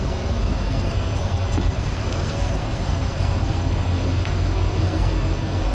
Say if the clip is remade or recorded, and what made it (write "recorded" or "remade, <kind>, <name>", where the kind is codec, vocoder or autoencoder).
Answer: remade, codec, SNAC